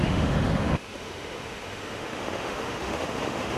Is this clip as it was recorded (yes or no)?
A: no